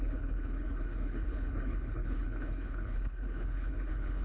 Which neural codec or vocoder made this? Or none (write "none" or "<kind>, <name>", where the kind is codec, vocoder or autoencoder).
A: codec, HILCodec